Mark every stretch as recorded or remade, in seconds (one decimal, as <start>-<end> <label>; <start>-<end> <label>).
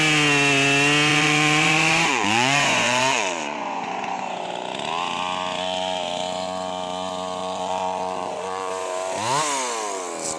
0.0-1.1 recorded; 1.1-4.5 remade; 4.5-7.4 recorded; 7.4-8.7 remade; 8.7-10.4 recorded